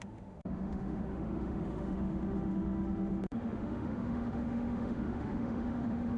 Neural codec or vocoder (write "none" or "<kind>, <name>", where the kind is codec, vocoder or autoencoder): autoencoder, DAC-VAE